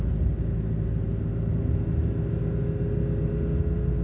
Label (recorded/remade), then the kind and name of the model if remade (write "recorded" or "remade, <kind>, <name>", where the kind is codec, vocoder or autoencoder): recorded